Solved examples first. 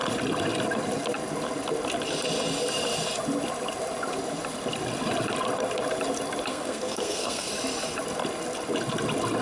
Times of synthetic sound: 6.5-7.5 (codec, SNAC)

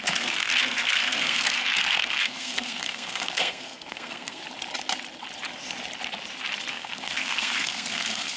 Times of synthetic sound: 0.0-4.4 (codec, SNAC); 6.7-8.4